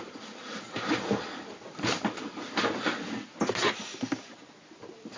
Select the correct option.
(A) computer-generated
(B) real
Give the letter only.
B